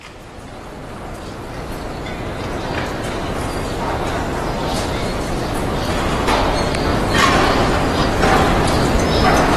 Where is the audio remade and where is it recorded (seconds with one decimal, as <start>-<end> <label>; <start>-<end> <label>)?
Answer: 0.0-4.7 recorded; 4.7-5.4 remade; 5.4-6.9 recorded; 6.9-8.1 remade; 8.1-9.6 recorded